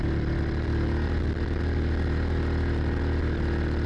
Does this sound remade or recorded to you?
recorded